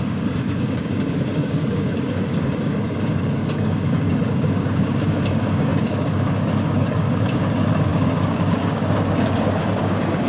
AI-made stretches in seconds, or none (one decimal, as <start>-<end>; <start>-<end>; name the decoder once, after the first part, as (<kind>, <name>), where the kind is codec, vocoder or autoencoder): 0.0-10.3 (codec, DAC)

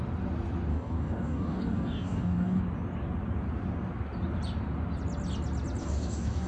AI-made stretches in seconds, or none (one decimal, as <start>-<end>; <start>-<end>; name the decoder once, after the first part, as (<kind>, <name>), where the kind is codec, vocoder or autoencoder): 0.7-2.6 (codec, DAC); 5.8-6.5

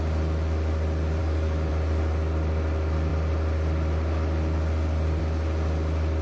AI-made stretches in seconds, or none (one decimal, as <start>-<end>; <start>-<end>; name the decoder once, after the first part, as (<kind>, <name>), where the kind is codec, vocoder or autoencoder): 1.2-1.7 (codec, DAC)

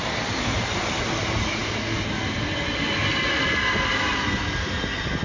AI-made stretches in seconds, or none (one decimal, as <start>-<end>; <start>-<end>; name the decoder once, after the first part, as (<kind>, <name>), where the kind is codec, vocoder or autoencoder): none

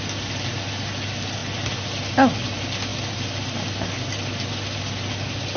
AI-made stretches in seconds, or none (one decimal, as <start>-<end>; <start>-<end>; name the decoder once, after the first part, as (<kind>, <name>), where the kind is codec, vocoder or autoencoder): none

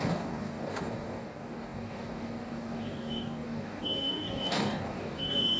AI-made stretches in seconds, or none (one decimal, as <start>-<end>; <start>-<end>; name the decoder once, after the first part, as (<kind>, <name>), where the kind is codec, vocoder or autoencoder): 0.0-5.6 (codec, DAC)